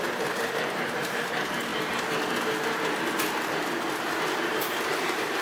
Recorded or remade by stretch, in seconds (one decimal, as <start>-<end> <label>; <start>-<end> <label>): 0.0-1.7 remade; 1.7-4.9 recorded; 4.9-5.4 remade